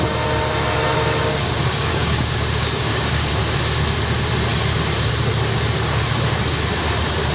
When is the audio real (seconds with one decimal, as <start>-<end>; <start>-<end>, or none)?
0.0-1.9; 3.3-7.3